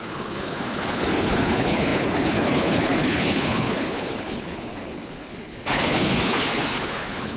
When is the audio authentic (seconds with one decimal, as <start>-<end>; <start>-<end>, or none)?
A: none